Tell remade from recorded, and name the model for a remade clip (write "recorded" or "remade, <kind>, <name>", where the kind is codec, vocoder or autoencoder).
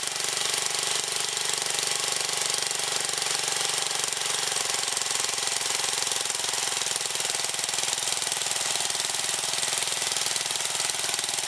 recorded